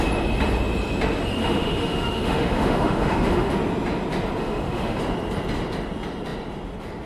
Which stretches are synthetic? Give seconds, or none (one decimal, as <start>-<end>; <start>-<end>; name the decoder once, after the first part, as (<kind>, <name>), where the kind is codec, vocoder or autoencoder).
1.4-3.5 (autoencoder, DAC-VAE); 4.4-5.0